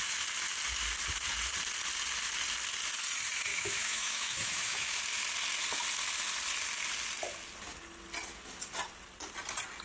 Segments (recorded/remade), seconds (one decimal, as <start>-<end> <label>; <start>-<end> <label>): 0.0-3.5 recorded; 3.5-5.0 remade; 5.0-9.8 recorded